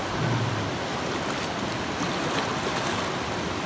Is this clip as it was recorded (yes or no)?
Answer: yes